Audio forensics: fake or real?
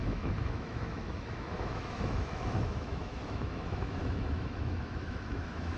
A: fake